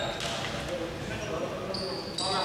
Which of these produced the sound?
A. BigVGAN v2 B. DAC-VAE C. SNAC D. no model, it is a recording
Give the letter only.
D